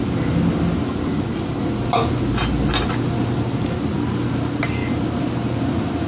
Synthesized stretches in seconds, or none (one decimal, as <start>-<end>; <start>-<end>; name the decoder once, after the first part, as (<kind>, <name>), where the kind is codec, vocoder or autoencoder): none